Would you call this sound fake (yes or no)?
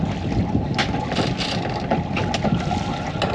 no